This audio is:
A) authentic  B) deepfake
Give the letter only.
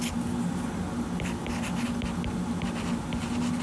A